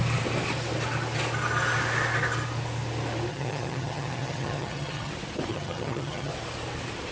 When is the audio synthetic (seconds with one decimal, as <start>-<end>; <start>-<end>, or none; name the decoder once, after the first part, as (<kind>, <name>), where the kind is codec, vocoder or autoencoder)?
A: 3.3-5.1 (vocoder, HiFi-GAN); 5.5-6.3